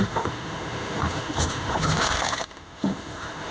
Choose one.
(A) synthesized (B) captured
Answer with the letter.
A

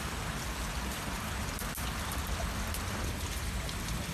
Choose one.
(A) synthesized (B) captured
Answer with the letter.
B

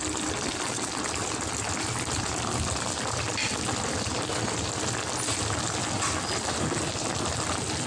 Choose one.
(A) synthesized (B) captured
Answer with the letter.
B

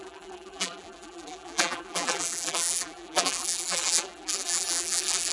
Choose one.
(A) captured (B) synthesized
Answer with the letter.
B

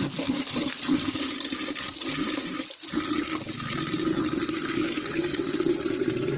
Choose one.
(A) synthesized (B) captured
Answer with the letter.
B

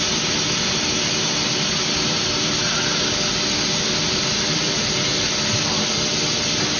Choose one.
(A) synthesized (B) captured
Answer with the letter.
B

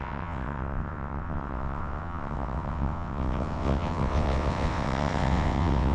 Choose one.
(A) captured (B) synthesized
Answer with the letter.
B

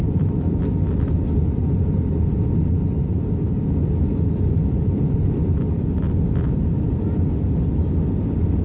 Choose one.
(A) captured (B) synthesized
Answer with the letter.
A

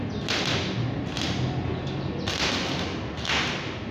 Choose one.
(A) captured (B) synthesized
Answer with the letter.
A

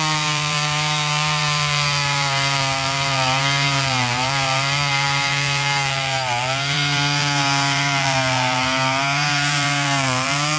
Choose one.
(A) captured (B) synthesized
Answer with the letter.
B